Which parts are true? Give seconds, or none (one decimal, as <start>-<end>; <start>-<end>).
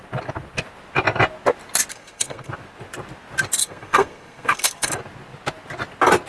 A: 0.0-1.9; 2.5-3.6; 4.9-6.3